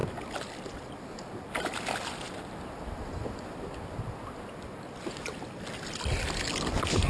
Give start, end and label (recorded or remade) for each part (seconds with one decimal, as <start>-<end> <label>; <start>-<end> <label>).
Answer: 0.0-7.1 recorded